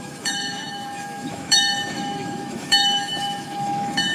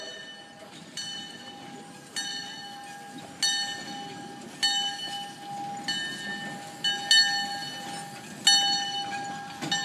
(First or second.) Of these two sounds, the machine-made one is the first